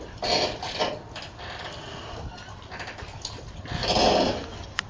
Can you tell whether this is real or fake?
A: real